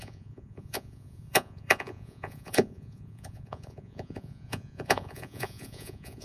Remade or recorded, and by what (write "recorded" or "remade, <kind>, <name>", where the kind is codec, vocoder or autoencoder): remade, vocoder, Vocos